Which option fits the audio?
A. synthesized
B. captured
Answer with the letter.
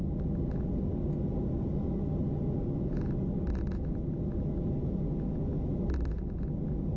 B